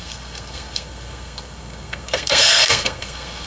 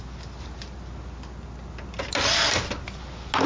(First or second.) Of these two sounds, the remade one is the first